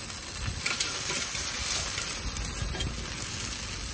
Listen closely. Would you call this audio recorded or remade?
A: recorded